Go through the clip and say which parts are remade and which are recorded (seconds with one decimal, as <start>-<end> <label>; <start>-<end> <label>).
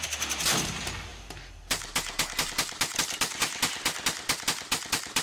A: 0.0-5.2 recorded